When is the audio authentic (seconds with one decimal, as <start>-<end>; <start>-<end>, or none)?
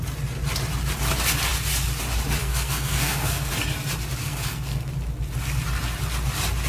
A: 0.0-2.4; 3.5-4.2; 4.9-6.7